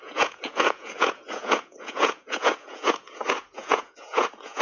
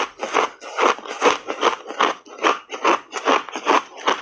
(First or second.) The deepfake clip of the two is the first